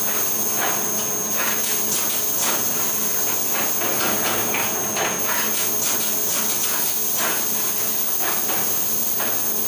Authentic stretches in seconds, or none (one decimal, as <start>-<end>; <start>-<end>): 0.0-3.9; 4.8-9.7